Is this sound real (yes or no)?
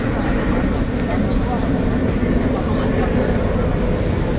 yes